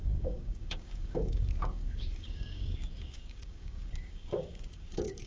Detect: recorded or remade remade